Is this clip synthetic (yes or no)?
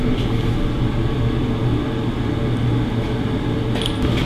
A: no